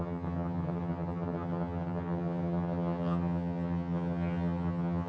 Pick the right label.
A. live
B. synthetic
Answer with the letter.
B